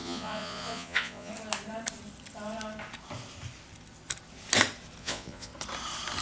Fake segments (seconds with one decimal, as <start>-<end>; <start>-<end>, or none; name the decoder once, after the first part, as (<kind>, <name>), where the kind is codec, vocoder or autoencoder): 0.0-1.3 (vocoder, Vocos); 5.0-5.5